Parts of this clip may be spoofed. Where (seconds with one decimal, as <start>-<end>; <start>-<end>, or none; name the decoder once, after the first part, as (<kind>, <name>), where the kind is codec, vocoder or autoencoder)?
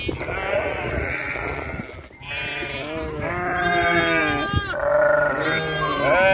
0.5-1.8 (vocoder, Vocos)